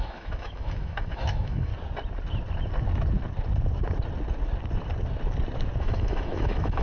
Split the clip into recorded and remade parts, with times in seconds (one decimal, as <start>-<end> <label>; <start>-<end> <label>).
0.0-1.7 remade; 1.7-5.8 recorded; 5.8-6.8 remade